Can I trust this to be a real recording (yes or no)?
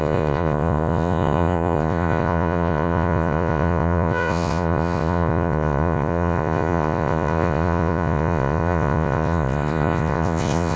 no